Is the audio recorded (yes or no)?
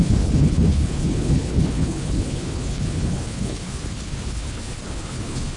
no